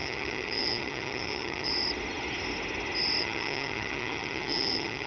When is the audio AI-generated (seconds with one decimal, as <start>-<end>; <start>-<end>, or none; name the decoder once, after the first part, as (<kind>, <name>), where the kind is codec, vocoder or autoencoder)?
0.0-1.7 (vocoder, HiFi-GAN); 3.2-5.1